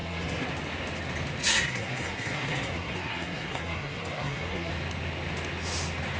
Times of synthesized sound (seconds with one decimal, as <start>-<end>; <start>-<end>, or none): 0.0-0.5; 1.4-4.7